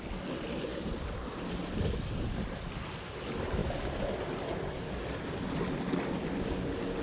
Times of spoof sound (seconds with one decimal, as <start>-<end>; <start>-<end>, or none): 0.7-1.7